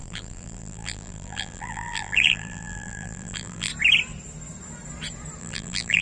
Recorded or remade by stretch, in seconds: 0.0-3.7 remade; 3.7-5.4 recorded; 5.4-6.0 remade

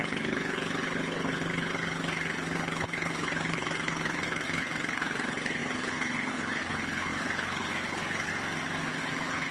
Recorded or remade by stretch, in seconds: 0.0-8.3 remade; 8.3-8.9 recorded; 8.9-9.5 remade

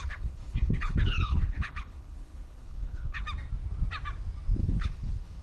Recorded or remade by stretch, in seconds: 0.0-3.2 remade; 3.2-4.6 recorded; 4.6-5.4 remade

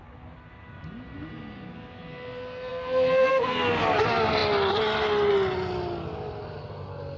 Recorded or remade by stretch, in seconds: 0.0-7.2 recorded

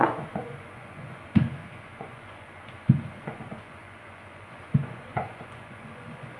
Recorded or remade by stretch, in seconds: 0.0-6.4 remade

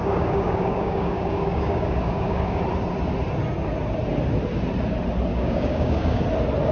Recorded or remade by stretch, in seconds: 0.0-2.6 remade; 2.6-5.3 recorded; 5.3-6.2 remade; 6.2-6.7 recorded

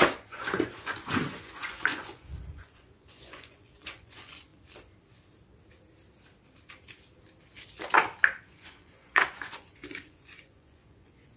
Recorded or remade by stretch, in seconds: 0.0-4.5 remade; 4.5-8.4 recorded; 8.4-11.4 remade